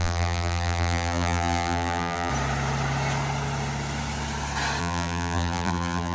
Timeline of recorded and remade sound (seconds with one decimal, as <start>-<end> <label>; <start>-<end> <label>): 0.0-2.3 remade; 2.3-4.8 recorded; 4.8-6.1 remade